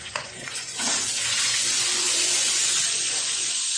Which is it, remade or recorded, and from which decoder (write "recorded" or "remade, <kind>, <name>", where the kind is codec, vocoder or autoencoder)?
remade, vocoder, Vocos